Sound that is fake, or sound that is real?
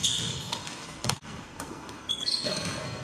fake